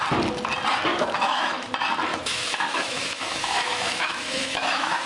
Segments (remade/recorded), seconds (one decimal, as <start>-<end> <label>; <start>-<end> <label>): 0.0-0.9 recorded; 0.9-1.7 remade; 1.7-2.1 recorded; 2.1-5.1 remade